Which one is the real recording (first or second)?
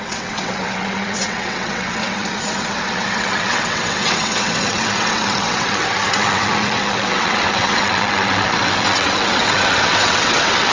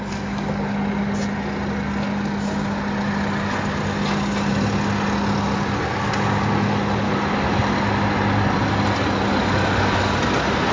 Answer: second